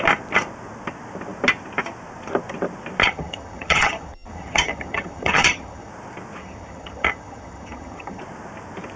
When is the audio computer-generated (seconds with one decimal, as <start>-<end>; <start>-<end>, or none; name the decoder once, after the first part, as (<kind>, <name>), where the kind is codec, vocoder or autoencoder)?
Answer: 3.0-5.9 (vocoder, HiFi-GAN); 6.4-8.2